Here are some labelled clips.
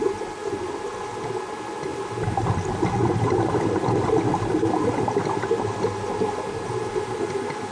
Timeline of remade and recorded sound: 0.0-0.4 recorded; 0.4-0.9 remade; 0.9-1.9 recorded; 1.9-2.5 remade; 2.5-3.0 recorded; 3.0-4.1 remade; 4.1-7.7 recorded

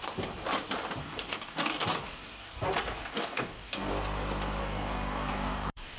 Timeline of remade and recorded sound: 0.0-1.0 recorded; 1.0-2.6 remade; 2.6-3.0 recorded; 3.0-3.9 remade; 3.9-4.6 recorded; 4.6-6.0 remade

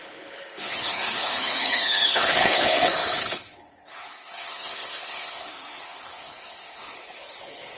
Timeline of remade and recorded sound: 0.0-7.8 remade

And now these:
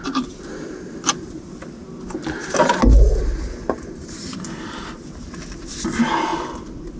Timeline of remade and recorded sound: 0.0-7.0 recorded

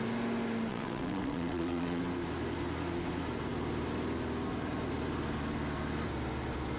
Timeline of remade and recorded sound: 0.0-0.7 recorded; 0.7-2.0 remade; 2.0-6.8 recorded

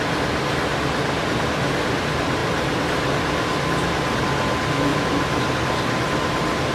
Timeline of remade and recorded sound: 0.0-6.7 recorded

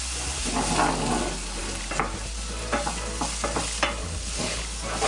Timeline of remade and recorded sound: 0.0-4.0 recorded; 4.0-4.6 remade; 4.6-5.1 recorded